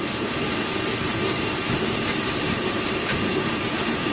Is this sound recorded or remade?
remade